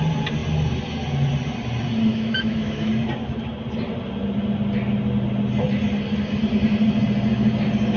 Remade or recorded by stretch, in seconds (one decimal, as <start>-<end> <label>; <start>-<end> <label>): 0.0-2.1 recorded; 2.1-2.9 remade; 2.9-8.0 recorded